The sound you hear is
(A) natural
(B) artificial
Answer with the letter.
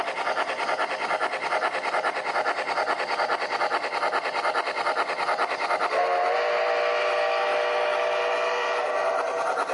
A